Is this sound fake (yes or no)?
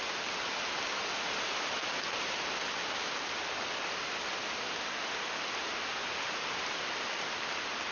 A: no